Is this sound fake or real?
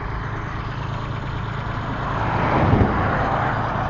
real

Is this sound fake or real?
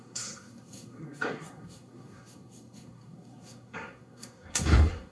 fake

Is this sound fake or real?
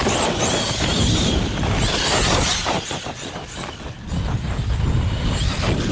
real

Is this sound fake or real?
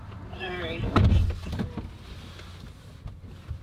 real